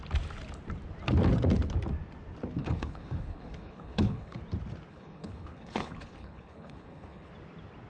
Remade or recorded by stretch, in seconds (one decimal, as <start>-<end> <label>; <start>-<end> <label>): 0.0-2.6 recorded; 2.6-4.4 remade; 4.4-4.9 recorded; 4.9-7.3 remade; 7.3-7.9 recorded